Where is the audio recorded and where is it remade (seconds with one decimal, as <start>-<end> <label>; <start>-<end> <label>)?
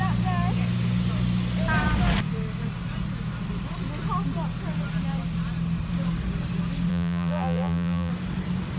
0.0-6.9 recorded; 6.9-8.1 remade; 8.1-8.8 recorded